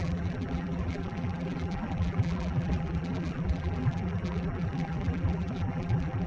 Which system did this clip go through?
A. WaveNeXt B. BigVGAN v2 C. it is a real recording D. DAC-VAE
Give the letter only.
B